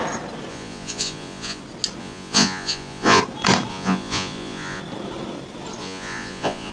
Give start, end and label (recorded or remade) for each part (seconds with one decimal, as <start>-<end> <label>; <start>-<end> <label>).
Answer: 0.0-0.5 recorded; 0.5-1.6 remade; 1.6-2.0 recorded; 2.0-3.2 remade; 3.2-3.7 recorded; 3.7-4.8 remade; 4.8-5.8 recorded; 5.8-6.7 remade